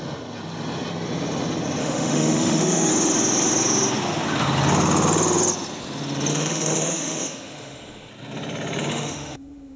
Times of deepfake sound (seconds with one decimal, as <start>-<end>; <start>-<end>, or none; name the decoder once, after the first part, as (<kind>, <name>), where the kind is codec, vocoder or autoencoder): 1.8-2.9 (autoencoder, DAC-VAE); 6.3-8.1; 8.9-9.8